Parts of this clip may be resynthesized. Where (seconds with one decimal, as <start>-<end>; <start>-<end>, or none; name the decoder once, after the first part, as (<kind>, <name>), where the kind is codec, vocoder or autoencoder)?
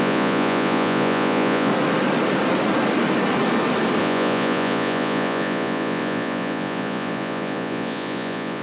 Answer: 0.0-1.7 (vocoder, Vocos); 4.0-8.6